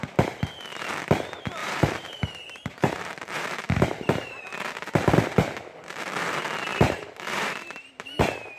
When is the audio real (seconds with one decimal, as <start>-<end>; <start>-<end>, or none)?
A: 0.0-1.6; 4.4-6.7; 8.2-8.6